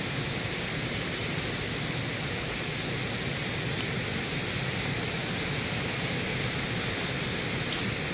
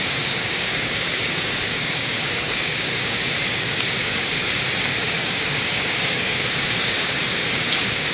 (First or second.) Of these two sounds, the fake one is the second